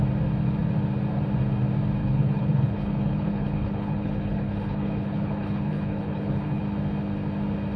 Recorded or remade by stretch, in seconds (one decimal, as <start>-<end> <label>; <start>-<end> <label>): 0.0-2.0 recorded; 2.0-6.6 remade; 6.6-7.8 recorded